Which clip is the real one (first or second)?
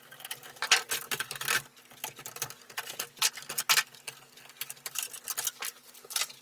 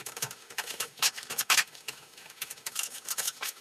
first